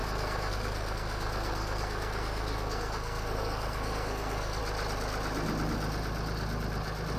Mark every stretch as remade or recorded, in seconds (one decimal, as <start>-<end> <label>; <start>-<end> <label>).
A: 0.0-4.6 remade; 4.6-7.2 recorded